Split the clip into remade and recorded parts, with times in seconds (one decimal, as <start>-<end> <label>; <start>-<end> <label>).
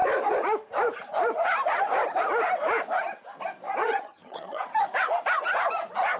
0.0-3.8 recorded; 3.8-4.6 remade; 4.6-6.2 recorded